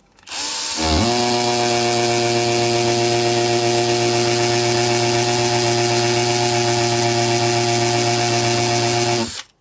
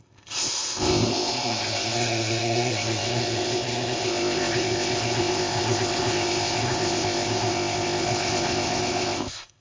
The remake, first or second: second